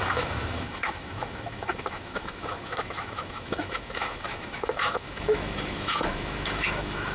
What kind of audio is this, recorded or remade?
remade